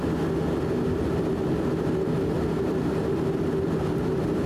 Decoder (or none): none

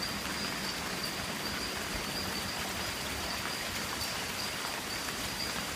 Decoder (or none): none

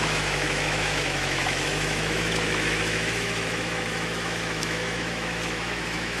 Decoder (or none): autoencoder, DAC-VAE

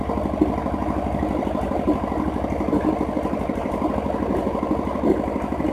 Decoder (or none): none